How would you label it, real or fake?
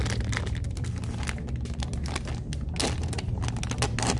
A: real